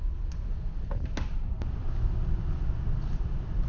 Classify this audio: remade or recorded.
recorded